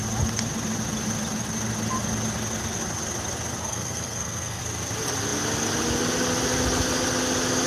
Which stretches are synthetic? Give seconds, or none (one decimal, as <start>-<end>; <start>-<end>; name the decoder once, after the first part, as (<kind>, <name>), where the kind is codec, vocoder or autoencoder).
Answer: 3.6-4.6 (codec, SNAC)